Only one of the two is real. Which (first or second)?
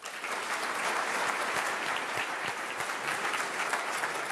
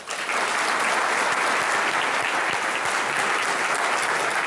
second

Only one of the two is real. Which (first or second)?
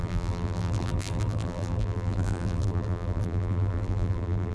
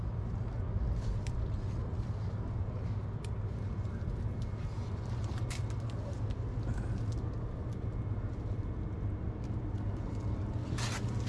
second